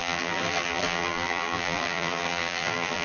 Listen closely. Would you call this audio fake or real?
fake